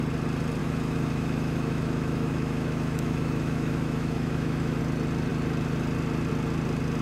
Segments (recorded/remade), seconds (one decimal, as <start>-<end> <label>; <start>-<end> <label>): 0.0-0.6 recorded; 0.6-4.8 remade; 4.8-7.0 recorded